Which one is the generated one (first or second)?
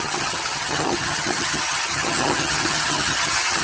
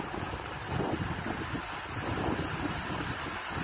first